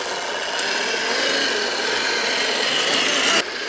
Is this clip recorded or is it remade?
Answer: recorded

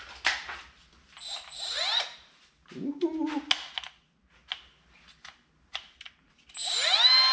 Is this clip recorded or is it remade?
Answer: recorded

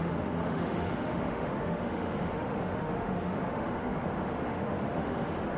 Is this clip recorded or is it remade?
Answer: remade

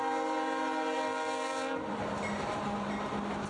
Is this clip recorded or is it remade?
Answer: recorded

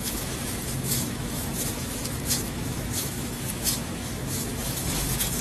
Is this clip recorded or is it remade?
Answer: remade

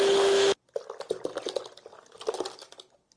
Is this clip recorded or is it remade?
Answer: recorded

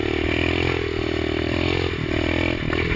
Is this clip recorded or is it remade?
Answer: recorded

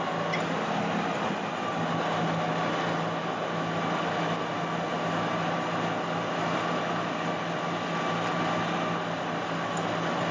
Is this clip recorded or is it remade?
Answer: recorded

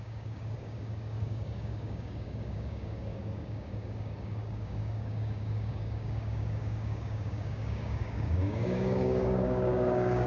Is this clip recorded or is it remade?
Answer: remade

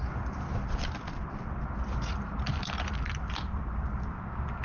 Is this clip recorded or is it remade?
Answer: recorded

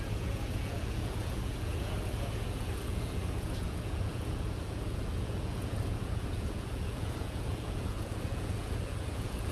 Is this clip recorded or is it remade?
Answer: remade